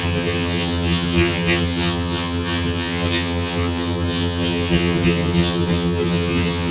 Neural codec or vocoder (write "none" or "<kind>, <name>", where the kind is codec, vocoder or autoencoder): vocoder, HiFi-GAN